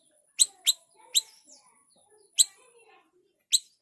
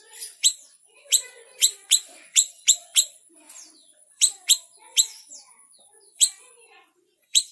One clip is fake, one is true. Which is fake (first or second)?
second